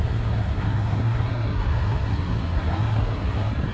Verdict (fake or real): fake